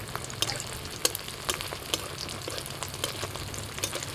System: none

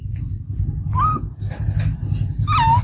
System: none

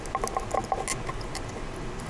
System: none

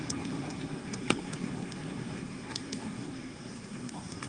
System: codec, SNAC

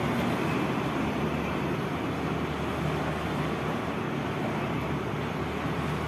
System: none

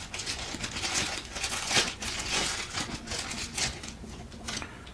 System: vocoder, Vocos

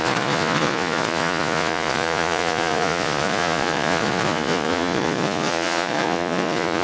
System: vocoder, Vocos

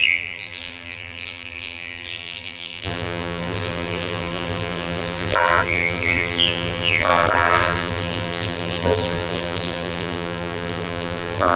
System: vocoder, BigVGAN v2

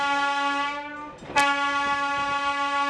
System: none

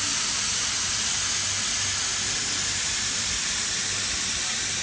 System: none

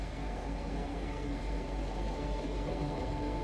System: codec, SNAC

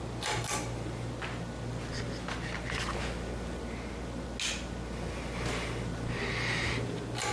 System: none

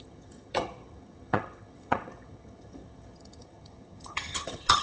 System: vocoder, HiFi-GAN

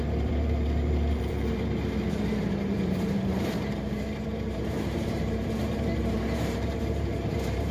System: vocoder, BigVGAN v2